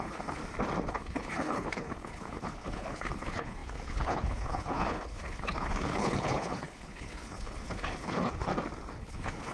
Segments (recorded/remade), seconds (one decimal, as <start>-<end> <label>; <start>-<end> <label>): 0.0-0.4 remade; 0.4-0.9 recorded; 0.9-8.5 remade; 8.5-9.0 recorded; 9.0-9.5 remade